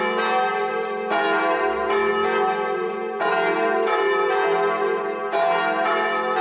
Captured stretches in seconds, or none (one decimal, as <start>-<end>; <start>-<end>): 0.0-6.4

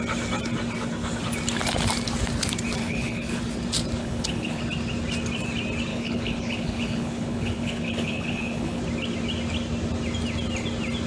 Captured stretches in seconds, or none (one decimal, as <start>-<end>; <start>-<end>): 0.0-2.8; 3.4-4.0; 4.6-5.9; 8.8-11.1

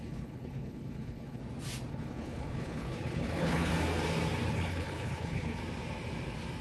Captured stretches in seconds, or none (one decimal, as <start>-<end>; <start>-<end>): 1.4-1.9; 3.7-4.5; 5.6-6.6

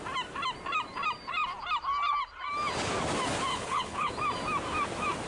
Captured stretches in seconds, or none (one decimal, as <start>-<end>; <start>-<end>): 0.0-3.5; 4.1-5.3

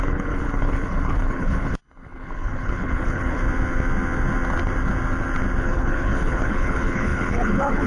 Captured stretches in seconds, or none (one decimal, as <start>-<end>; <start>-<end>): 3.4-5.6

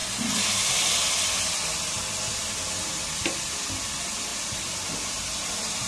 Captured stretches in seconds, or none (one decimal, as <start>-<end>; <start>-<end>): 0.0-5.9

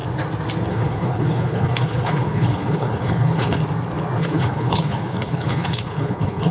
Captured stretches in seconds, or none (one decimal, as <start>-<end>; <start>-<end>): 0.0-0.7; 3.6-4.2

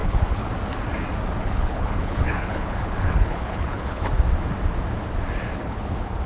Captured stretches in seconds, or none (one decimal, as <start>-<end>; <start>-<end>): 0.5-1.4; 4.1-5.6